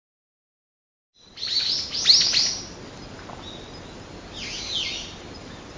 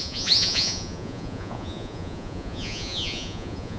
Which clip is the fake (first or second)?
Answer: second